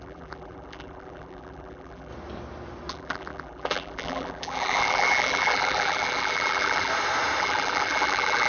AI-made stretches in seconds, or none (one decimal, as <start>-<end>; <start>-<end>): 0.0-2.1; 2.9-6.9; 7.4-8.5